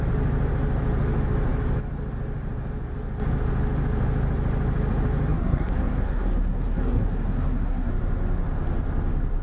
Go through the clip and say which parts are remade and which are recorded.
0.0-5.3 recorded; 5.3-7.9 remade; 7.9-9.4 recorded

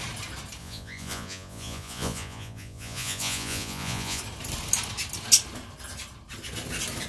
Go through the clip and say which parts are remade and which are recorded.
0.0-0.6 recorded; 0.6-4.2 remade; 4.2-7.1 recorded

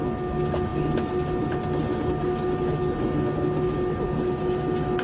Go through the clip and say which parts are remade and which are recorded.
0.0-5.0 recorded

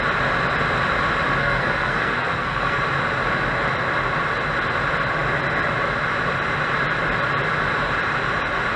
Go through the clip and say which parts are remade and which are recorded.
0.0-1.4 recorded; 1.4-2.8 remade; 2.8-8.8 recorded

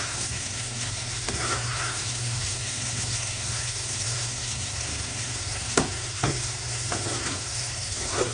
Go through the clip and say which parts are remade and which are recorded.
0.0-8.3 remade

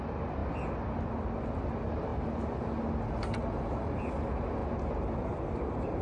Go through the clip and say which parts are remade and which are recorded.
0.0-6.0 recorded

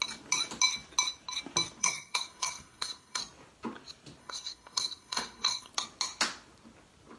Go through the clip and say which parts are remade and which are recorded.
0.0-1.8 recorded; 1.8-3.2 remade; 3.2-4.2 recorded; 4.2-5.7 remade; 5.7-7.2 recorded

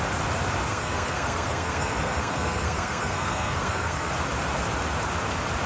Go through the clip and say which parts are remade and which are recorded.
0.0-0.7 recorded; 0.7-4.1 remade; 4.1-5.7 recorded